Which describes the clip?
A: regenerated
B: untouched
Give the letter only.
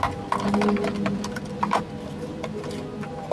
B